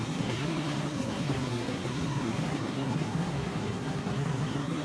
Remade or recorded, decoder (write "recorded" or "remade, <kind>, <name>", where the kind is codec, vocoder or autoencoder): remade, codec, SNAC